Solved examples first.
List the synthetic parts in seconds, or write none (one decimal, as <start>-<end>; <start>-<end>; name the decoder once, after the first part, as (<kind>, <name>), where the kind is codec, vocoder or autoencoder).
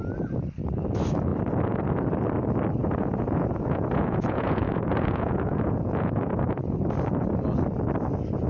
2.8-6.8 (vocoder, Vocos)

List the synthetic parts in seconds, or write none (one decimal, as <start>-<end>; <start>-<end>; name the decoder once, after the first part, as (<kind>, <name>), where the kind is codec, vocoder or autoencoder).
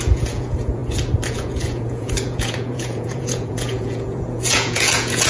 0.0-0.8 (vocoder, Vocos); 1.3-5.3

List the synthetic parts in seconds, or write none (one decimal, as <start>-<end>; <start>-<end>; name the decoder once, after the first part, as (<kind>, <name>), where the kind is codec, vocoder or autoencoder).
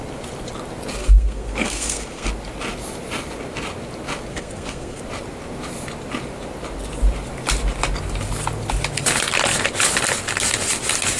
1.0-2.3 (codec, SNAC); 4.3-5.0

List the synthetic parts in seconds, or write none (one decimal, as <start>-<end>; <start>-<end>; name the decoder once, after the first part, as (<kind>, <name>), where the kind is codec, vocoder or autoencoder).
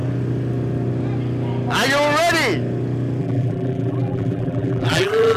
3.2-5.4 (vocoder, BigVGAN v2)